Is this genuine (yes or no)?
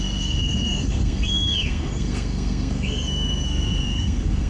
no